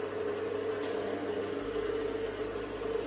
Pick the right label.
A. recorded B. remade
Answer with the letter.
A